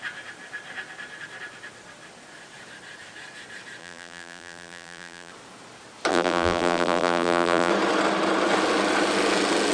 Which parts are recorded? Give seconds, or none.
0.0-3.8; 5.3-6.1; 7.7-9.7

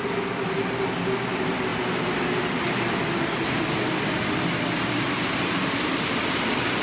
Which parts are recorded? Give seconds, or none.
0.0-6.8

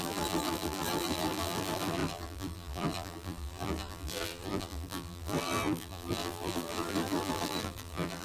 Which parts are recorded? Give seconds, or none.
none

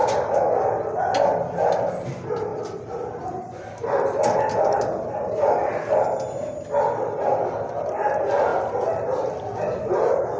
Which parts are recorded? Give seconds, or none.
0.0-10.4

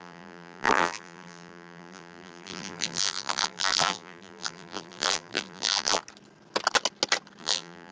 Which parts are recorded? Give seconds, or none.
6.0-7.4

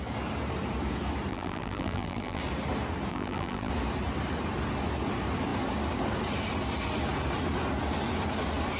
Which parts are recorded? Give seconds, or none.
0.0-1.3; 2.4-3.1; 3.7-8.8